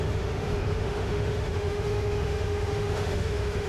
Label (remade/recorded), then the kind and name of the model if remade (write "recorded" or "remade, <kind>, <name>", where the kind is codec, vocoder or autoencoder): remade, autoencoder, DAC-VAE